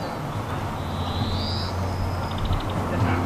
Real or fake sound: real